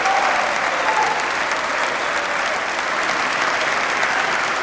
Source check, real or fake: real